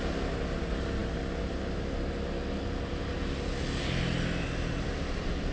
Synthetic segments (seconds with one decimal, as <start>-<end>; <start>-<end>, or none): none